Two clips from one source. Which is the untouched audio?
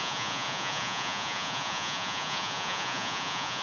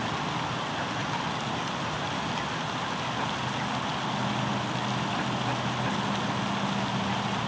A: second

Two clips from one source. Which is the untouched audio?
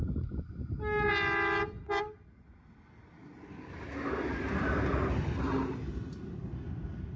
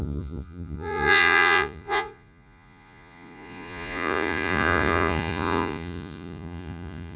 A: first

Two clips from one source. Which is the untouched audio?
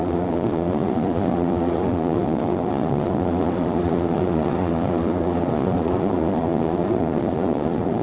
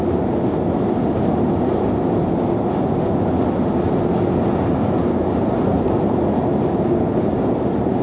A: second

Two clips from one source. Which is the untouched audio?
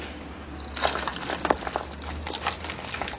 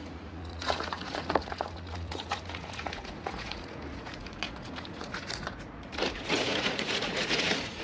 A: first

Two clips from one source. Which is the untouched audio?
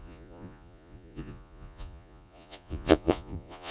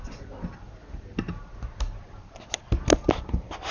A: second